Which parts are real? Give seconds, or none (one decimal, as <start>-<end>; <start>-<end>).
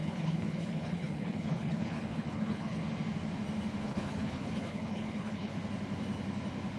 2.8-3.8; 5.5-6.8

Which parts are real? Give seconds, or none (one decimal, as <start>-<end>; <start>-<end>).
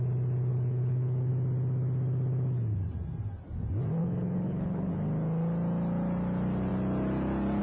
0.0-0.5; 1.3-4.0; 4.9-7.6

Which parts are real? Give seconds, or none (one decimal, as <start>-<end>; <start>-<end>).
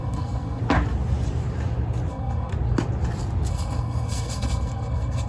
0.6-2.1; 2.5-3.5